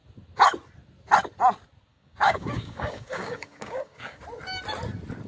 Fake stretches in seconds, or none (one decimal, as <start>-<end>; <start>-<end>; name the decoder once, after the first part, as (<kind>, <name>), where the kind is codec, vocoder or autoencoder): 1.9-4.2 (codec, DAC)